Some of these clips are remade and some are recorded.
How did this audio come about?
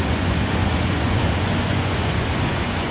remade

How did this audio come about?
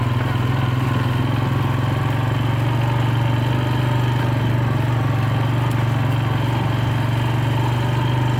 recorded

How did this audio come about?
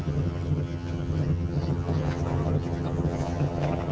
remade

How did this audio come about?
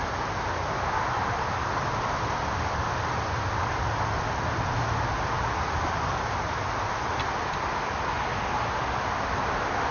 recorded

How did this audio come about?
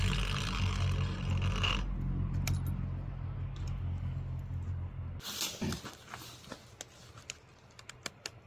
recorded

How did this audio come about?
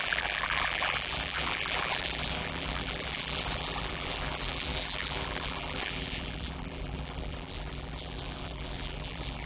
remade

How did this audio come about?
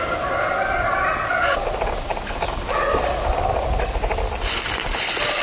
remade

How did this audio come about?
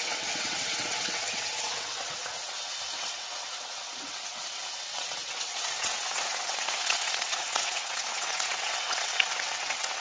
remade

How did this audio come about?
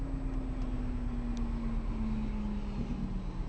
recorded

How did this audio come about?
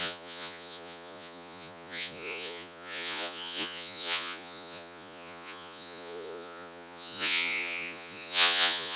remade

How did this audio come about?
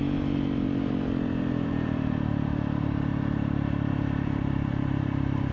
remade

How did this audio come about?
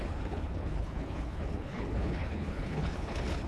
remade